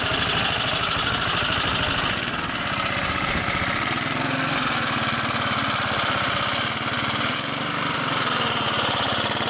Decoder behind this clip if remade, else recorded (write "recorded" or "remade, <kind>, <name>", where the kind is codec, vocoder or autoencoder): recorded